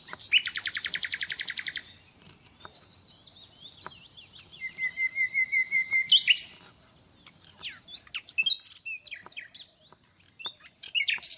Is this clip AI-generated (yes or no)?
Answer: no